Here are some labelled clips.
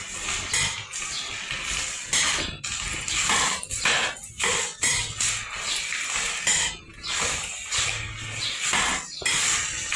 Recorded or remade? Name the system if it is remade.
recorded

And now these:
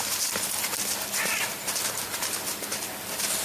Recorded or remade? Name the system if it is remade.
recorded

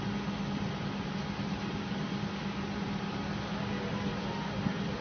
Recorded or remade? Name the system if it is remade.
recorded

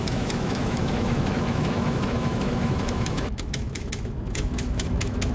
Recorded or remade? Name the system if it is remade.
remade, autoencoder, DAC-VAE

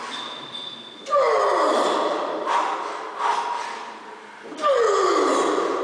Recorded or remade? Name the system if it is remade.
recorded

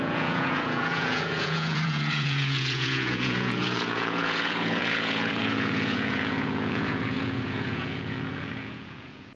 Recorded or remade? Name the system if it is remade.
remade, vocoder, Vocos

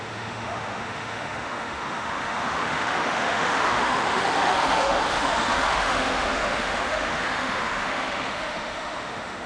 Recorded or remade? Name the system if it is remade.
remade, autoencoder, DAC-VAE